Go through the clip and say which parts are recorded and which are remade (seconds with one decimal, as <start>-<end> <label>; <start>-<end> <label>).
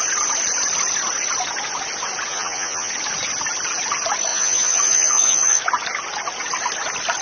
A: 0.0-2.3 recorded; 2.3-2.9 remade; 2.9-4.3 recorded; 4.3-5.6 remade; 5.6-7.2 recorded